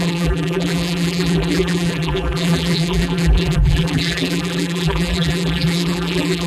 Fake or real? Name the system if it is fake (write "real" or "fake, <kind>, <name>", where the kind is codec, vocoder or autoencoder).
fake, vocoder, BigVGAN v2